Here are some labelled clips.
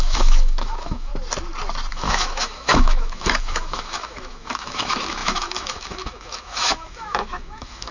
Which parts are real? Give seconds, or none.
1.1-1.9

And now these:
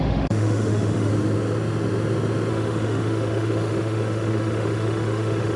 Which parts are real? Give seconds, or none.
1.1-2.5

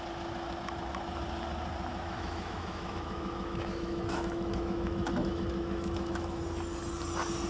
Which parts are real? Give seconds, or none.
0.0-1.9; 6.4-7.5

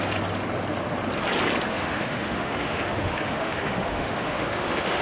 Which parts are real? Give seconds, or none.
0.0-1.7

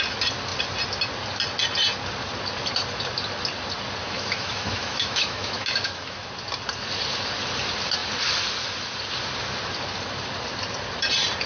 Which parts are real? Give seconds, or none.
0.0-4.0; 6.2-11.5

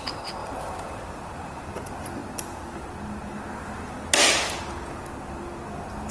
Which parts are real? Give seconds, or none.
0.0-6.1

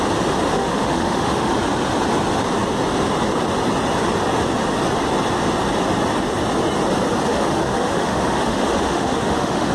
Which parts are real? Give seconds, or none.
0.0-0.5; 1.5-7.3